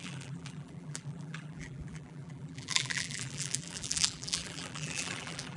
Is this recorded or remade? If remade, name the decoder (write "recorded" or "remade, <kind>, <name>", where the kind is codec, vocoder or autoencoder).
remade, vocoder, BigVGAN v2